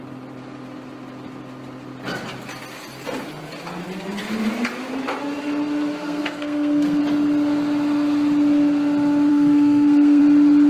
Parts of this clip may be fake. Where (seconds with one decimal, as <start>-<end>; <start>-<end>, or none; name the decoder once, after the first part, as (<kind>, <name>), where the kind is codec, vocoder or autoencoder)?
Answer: 6.0-7.0 (codec, SNAC); 9.3-10.2